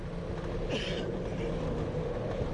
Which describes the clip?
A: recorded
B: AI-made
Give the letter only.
A